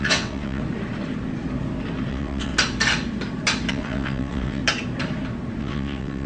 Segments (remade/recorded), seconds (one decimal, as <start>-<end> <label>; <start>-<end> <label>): 0.0-0.6 remade; 0.6-2.1 recorded; 2.1-2.5 remade; 2.5-3.7 recorded; 3.7-4.6 remade; 4.6-5.6 recorded; 5.6-6.3 remade